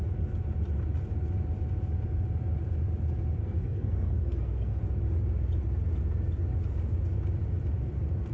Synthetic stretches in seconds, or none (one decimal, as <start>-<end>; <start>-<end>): 3.4-4.8